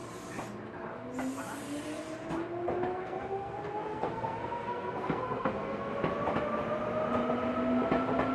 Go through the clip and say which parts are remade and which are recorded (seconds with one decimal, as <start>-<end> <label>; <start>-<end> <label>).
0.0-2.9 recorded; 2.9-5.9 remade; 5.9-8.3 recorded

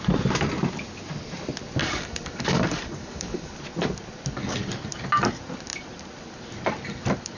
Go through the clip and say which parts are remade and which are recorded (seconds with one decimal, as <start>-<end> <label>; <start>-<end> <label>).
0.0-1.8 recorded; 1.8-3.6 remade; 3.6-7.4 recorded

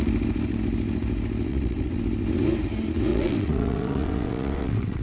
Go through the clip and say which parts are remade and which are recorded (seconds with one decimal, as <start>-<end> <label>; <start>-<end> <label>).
0.0-1.5 recorded; 1.5-2.0 remade; 2.0-3.1 recorded; 3.1-5.0 remade

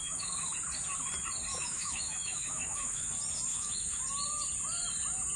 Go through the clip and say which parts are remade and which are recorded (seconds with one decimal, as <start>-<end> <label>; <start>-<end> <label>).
0.0-0.5 remade; 0.5-1.5 recorded; 1.5-3.1 remade; 3.1-3.5 recorded; 3.5-4.0 remade; 4.0-5.4 recorded